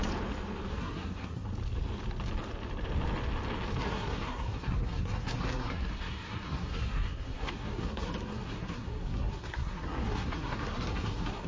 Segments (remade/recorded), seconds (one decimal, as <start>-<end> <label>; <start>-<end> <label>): 0.0-0.7 recorded; 0.7-1.5 remade; 1.5-3.8 recorded; 3.8-11.5 remade